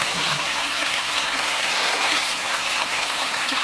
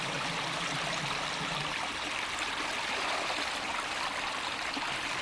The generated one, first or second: first